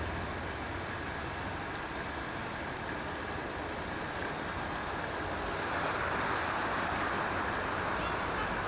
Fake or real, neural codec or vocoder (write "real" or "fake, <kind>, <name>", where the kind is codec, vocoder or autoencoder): real